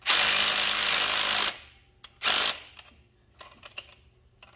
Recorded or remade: recorded